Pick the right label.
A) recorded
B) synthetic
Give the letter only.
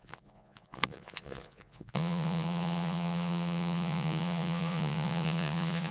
B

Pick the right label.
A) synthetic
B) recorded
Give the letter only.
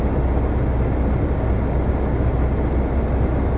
B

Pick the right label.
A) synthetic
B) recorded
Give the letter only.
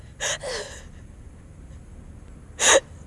B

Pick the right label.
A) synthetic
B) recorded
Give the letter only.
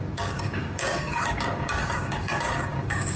A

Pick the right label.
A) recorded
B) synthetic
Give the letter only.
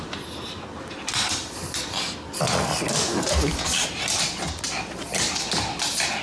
A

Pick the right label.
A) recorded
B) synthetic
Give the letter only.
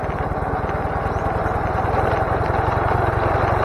A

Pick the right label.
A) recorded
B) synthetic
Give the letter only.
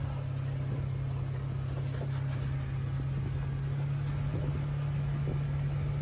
A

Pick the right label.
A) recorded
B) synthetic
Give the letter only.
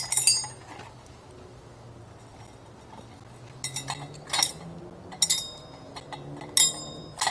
A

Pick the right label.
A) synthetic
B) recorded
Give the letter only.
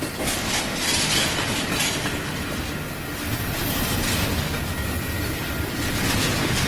B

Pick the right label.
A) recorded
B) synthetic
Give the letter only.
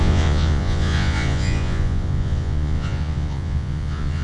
B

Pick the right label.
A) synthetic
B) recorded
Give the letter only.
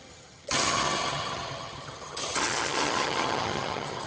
A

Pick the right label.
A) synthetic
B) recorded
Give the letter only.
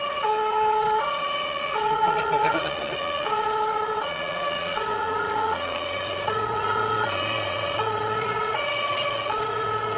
A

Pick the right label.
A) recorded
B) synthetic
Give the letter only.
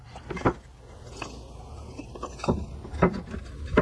A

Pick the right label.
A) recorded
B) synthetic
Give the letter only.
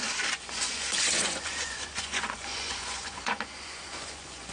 B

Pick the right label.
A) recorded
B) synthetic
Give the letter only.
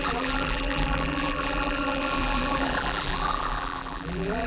B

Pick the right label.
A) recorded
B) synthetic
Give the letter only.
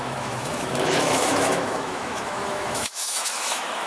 B